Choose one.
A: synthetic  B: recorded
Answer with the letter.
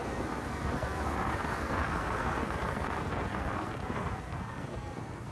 A